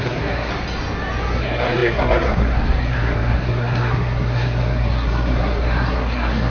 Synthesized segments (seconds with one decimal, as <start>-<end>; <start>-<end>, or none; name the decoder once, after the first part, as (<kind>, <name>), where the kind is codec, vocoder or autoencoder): 0.0-0.5 (codec, SNAC); 1.4-6.5